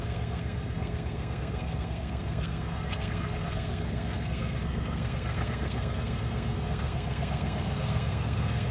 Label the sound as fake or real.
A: fake